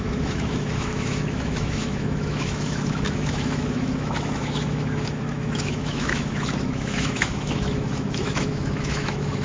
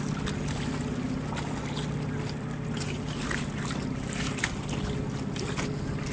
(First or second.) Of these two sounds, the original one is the second